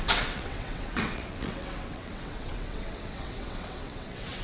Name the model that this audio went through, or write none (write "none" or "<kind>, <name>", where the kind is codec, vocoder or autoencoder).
vocoder, WaveNeXt